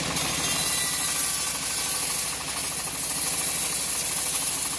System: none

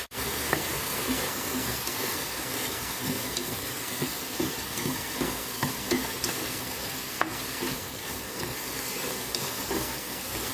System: codec, SNAC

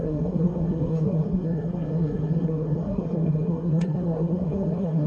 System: codec, SNAC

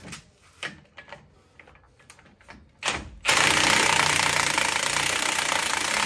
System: none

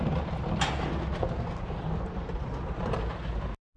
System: none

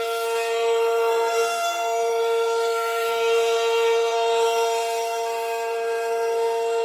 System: codec, SNAC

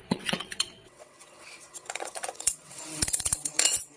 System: vocoder, WaveNeXt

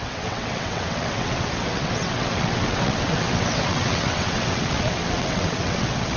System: vocoder, WaveNeXt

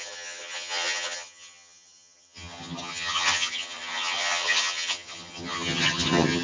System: vocoder, HiFi-GAN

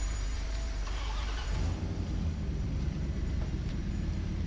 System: vocoder, BigVGAN v2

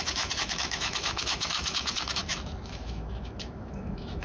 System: autoencoder, DAC-VAE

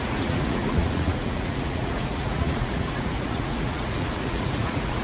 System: vocoder, Vocos